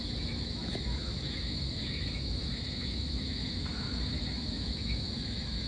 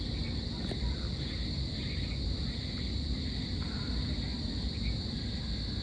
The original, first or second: second